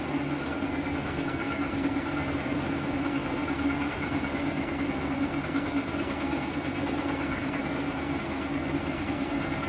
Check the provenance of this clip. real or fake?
fake